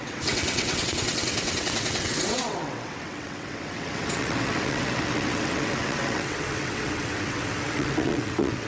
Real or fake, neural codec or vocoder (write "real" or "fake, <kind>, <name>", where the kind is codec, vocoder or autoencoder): fake, vocoder, WaveNeXt